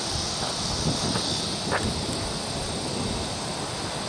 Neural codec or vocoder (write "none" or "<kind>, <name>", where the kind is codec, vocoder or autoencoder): none